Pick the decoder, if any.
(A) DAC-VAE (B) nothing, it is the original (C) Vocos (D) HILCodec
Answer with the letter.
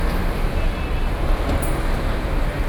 B